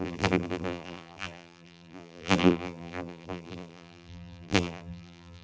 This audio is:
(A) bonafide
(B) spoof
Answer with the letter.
B